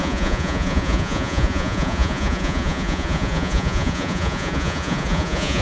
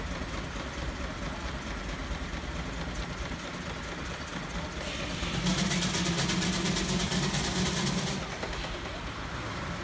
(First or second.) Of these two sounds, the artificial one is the first